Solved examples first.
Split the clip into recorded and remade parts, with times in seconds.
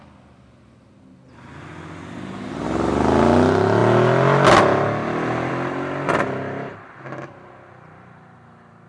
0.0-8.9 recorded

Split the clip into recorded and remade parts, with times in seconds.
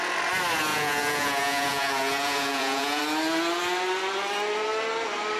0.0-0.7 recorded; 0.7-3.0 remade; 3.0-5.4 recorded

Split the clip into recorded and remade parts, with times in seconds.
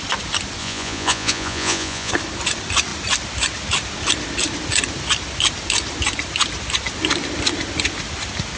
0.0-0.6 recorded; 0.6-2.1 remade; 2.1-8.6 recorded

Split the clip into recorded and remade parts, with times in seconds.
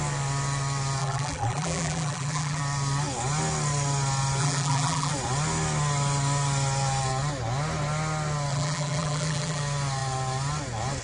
0.0-1.0 recorded; 1.0-2.6 remade; 2.6-4.4 recorded; 4.4-5.1 remade; 5.1-8.5 recorded; 8.5-9.6 remade; 9.6-11.0 recorded